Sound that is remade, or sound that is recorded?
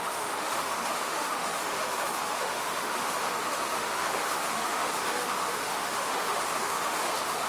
remade